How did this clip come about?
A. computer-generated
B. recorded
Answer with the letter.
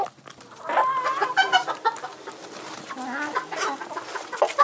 B